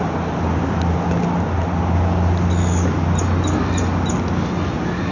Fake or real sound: real